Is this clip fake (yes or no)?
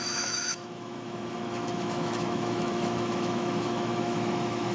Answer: yes